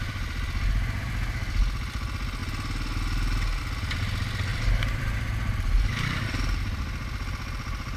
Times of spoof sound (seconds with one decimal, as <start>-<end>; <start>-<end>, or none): 4.5-6.2